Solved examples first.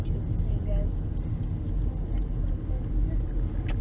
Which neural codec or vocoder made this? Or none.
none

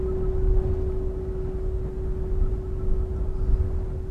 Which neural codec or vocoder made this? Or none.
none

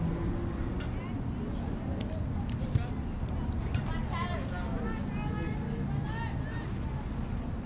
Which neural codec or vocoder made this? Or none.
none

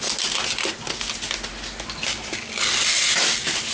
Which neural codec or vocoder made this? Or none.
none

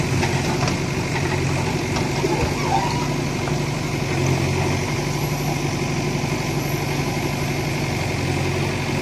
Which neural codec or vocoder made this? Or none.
none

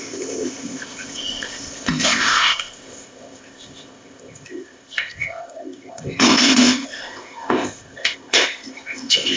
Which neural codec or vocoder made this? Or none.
codec, ZipCodec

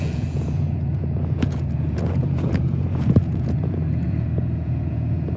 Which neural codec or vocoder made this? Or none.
vocoder, Vocos